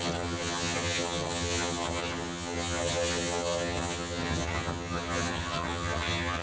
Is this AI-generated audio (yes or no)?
yes